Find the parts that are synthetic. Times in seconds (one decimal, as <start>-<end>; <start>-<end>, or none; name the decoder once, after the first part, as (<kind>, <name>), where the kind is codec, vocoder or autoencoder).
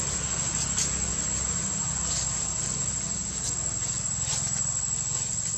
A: none